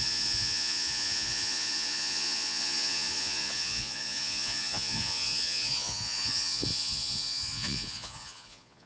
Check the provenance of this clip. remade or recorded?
remade